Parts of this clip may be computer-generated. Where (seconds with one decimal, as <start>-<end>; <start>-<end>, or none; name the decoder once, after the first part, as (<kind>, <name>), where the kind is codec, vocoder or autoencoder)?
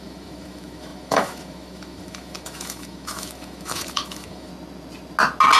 0.0-4.5 (autoencoder, DAC-VAE)